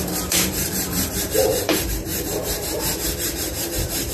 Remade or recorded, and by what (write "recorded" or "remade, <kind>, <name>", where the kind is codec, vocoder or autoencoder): remade, vocoder, BigVGAN v2